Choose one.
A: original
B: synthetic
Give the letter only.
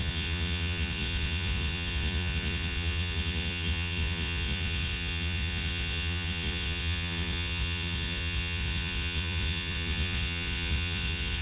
B